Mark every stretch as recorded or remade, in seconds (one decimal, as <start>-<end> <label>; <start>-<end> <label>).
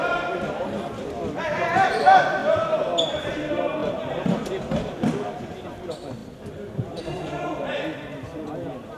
0.0-0.9 recorded; 0.9-9.0 remade